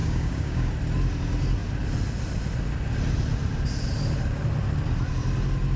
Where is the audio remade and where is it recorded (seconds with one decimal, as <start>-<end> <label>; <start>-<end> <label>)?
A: 0.0-0.7 remade; 0.7-5.8 recorded